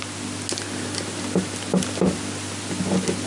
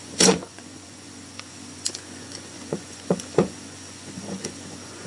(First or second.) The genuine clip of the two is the first